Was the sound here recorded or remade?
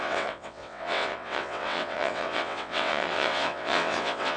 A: remade